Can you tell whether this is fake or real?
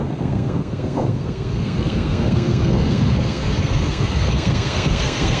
fake